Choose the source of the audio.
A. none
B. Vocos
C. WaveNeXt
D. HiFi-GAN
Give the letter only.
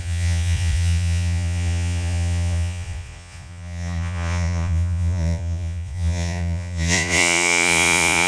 B